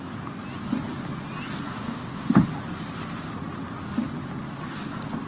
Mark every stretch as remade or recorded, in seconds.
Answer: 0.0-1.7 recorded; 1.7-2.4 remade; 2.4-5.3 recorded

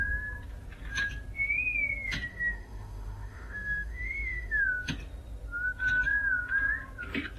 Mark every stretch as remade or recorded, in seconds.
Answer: 0.0-2.3 recorded; 2.3-4.6 remade; 4.6-7.4 recorded

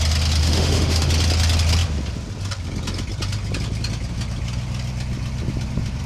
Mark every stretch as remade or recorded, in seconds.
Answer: 0.0-0.4 recorded; 0.4-1.1 remade; 1.1-6.1 recorded

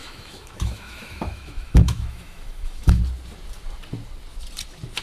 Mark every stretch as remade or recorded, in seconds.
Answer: 0.0-3.0 remade; 3.0-5.0 recorded